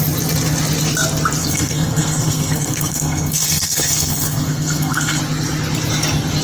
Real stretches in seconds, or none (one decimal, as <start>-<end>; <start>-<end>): 0.0-1.4; 5.2-6.4